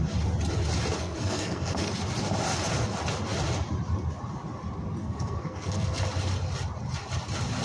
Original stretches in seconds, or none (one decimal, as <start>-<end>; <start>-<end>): 0.0-1.0; 1.9-5.0; 6.0-7.6